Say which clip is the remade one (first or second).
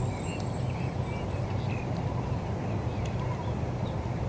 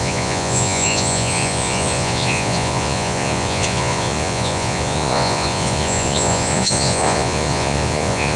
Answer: second